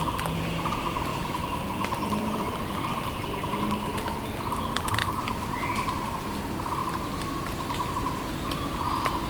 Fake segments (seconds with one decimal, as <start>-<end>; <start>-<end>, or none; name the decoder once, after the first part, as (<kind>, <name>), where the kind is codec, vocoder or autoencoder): 1.1-3.1 (vocoder, BigVGAN v2); 5.0-5.7; 6.8-7.9